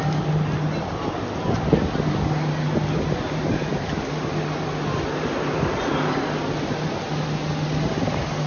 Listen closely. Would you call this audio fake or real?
real